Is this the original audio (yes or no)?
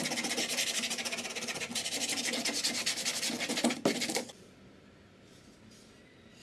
yes